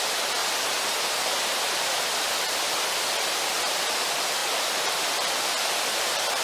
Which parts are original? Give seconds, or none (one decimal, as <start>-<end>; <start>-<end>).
0.0-4.4